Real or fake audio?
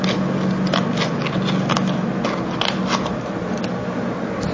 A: real